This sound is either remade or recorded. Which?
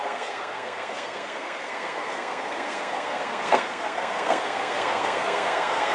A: remade